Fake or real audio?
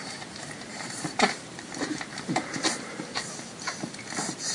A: fake